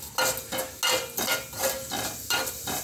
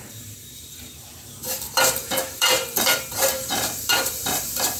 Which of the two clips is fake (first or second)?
second